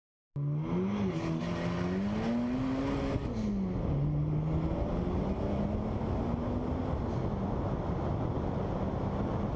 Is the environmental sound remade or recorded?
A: recorded